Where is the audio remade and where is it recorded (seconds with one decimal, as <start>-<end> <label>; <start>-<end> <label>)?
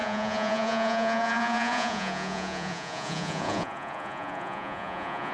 0.0-5.3 remade